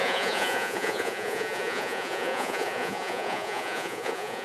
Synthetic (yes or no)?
yes